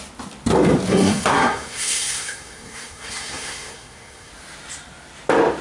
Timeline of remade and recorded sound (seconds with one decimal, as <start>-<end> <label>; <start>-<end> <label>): 0.0-0.9 recorded; 0.9-4.3 remade; 4.3-5.6 recorded